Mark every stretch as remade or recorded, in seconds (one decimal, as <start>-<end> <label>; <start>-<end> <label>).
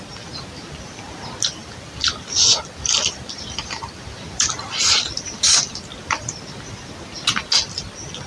0.0-1.6 recorded; 1.6-5.7 remade; 5.7-8.3 recorded